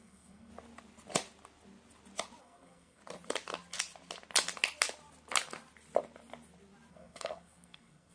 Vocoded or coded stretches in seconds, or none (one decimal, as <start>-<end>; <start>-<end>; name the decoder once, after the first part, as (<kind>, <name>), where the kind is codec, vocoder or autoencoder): 0.0-0.5 (codec, SNAC); 2.4-3.0; 6.9-8.1